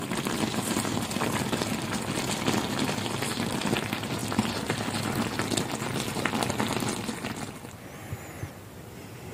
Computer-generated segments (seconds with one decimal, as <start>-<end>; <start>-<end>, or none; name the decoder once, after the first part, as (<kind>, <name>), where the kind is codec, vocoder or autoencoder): none